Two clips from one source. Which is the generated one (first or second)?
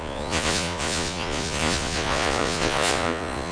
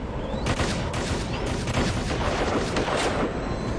first